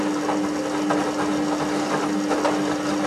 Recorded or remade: recorded